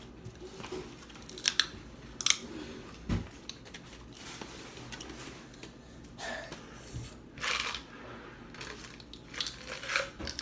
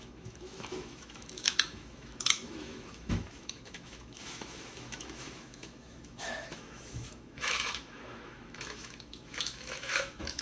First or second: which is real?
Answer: first